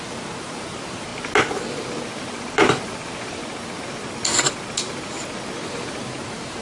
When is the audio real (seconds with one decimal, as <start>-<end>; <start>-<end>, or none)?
1.1-2.2; 3.4-5.7